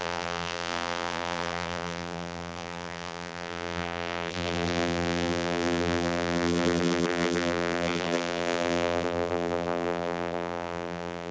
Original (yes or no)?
no